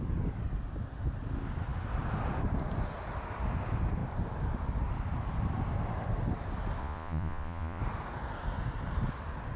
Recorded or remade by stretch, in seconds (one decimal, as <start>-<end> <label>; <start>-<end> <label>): 0.0-6.8 recorded; 6.8-7.8 remade; 7.8-9.6 recorded